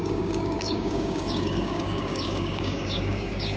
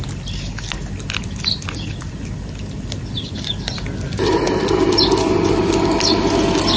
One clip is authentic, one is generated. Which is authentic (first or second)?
second